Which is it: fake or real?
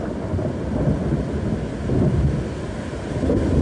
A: real